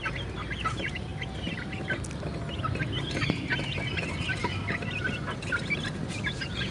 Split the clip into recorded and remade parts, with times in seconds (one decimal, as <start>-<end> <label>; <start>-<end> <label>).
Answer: 0.0-6.7 recorded